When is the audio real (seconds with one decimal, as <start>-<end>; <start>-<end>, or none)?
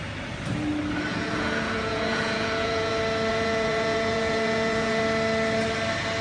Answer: 0.0-1.1; 2.9-3.3; 5.0-6.2